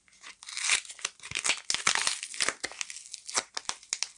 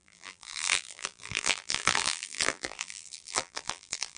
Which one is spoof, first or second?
second